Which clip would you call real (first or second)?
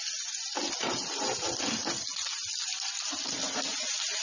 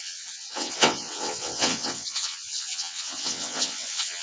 first